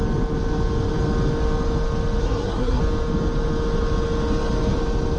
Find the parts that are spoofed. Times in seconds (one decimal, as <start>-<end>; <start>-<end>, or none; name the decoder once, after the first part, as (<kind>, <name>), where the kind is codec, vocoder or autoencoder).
2.2-2.8 (codec, SNAC)